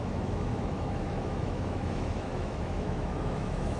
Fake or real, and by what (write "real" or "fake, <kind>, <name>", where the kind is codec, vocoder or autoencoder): fake, autoencoder, DAC-VAE